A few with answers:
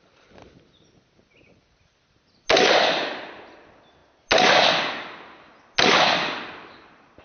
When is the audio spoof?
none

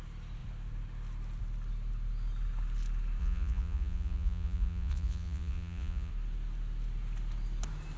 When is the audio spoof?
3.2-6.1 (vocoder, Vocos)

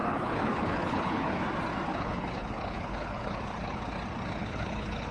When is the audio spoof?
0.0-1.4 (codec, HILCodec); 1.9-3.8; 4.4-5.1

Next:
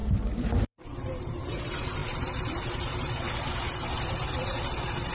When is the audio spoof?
0.0-5.1 (vocoder, BigVGAN v2)

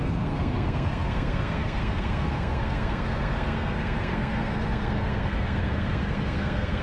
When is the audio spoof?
0.0-6.8 (codec, SNAC)